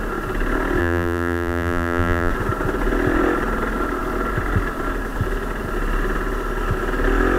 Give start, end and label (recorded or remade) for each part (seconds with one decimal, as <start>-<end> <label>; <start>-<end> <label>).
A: 0.0-0.8 recorded; 0.8-2.3 remade; 2.3-7.4 recorded